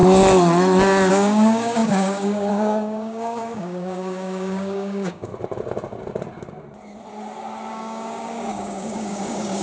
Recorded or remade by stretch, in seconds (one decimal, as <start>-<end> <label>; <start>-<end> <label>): 0.0-1.1 recorded; 1.1-5.3 remade; 5.3-7.7 recorded; 7.7-9.6 remade

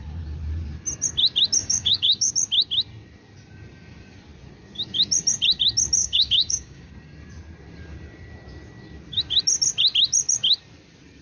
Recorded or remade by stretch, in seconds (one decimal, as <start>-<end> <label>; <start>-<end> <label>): 0.0-1.6 recorded; 1.6-2.3 remade; 2.3-6.0 recorded; 6.0-6.9 remade; 6.9-11.2 recorded

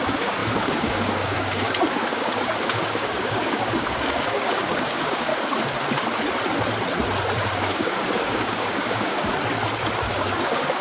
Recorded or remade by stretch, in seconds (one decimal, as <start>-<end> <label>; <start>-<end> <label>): 0.0-5.3 remade; 5.3-7.6 recorded; 7.6-9.3 remade; 9.3-10.1 recorded; 10.1-10.8 remade

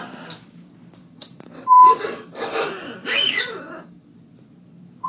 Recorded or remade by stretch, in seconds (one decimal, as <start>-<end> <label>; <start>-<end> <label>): 0.0-1.0 recorded; 1.0-4.1 remade; 4.1-5.1 recorded

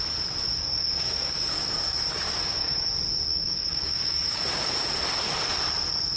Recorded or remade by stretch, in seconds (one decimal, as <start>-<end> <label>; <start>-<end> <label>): 0.0-0.6 recorded; 0.6-2.9 remade; 2.9-3.3 recorded; 3.3-4.4 remade; 4.4-6.2 recorded

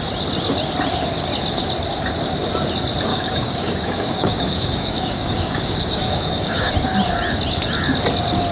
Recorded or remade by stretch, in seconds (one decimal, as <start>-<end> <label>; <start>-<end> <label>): 0.0-3.1 recorded; 3.1-6.7 remade; 6.7-8.5 recorded

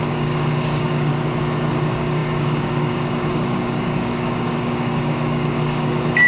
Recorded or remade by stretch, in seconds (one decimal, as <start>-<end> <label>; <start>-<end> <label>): 0.0-1.1 remade; 1.1-1.7 recorded; 1.7-6.3 remade

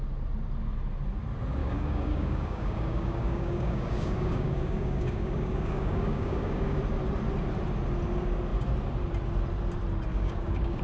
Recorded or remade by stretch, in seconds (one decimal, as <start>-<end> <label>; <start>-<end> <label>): 0.0-1.6 recorded; 1.6-6.8 remade; 6.8-10.1 recorded; 10.1-10.8 remade